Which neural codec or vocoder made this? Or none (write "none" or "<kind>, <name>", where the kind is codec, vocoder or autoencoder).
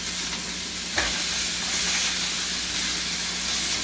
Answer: none